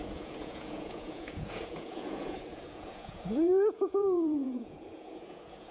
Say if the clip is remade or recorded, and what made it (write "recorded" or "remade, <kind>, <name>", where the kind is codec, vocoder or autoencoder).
remade, vocoder, Vocos